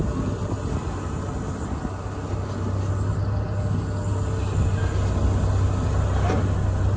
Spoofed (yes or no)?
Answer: no